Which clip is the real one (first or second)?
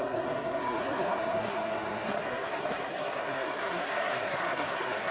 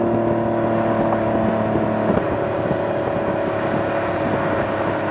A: second